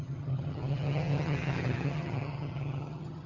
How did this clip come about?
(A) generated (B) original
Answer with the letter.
A